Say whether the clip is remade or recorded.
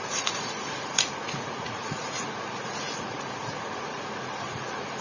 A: remade